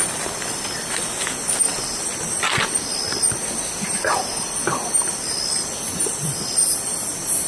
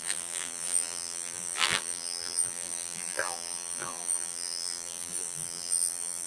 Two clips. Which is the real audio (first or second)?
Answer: first